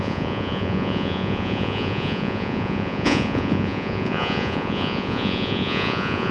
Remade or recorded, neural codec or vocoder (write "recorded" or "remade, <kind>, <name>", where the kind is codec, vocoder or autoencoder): remade, vocoder, Vocos